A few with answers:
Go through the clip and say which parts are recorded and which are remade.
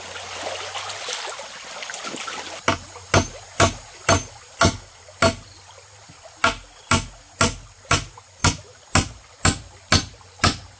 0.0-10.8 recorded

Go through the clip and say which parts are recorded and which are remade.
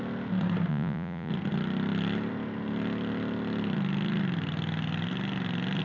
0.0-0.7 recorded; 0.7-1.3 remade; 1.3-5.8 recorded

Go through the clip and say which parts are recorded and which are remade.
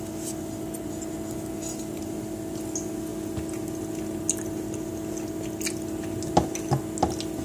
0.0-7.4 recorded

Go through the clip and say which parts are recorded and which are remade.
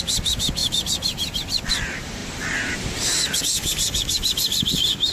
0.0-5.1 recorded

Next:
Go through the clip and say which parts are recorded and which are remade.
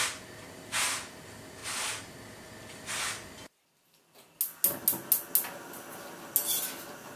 0.0-7.2 recorded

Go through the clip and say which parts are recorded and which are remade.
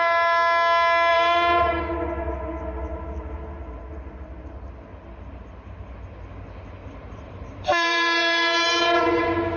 0.0-1.1 recorded; 1.1-1.8 remade; 1.8-6.8 recorded; 6.8-9.0 remade; 9.0-9.6 recorded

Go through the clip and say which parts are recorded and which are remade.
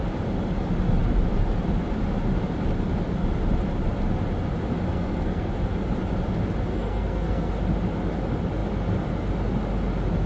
0.0-4.9 recorded; 4.9-5.5 remade; 5.5-6.7 recorded; 6.7-7.5 remade; 7.5-10.3 recorded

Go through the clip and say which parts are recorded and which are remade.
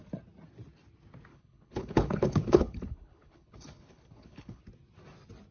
0.0-1.3 recorded; 1.3-4.6 remade; 4.6-5.5 recorded